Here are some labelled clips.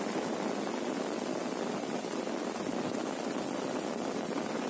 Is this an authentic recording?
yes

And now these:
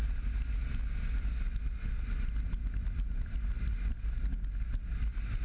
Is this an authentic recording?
yes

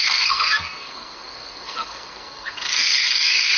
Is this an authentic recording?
no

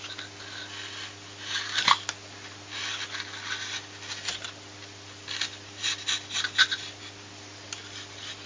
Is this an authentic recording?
yes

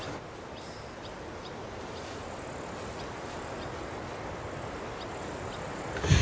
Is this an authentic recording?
yes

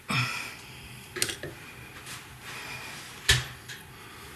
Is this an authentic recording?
yes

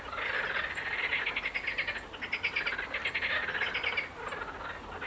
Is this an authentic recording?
yes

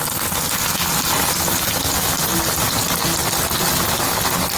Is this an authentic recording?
yes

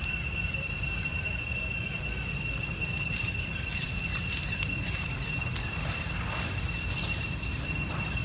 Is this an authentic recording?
no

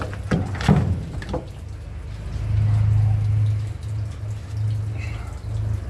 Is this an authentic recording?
yes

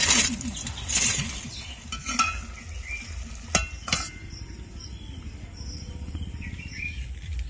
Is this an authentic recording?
yes